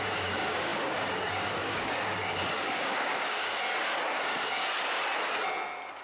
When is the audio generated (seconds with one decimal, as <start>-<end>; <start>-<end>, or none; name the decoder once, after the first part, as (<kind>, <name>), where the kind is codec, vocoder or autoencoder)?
0.0-3.4 (codec, DAC)